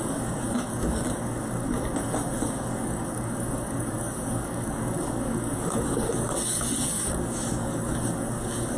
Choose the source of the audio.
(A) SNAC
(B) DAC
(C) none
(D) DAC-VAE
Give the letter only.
B